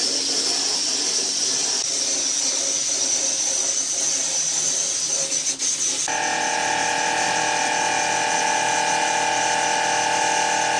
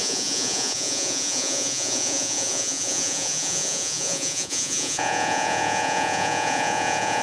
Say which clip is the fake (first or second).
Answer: second